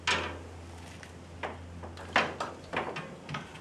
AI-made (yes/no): no